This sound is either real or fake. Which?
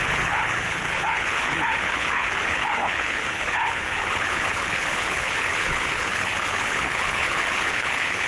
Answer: fake